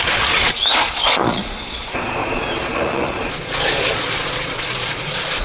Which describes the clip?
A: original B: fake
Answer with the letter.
B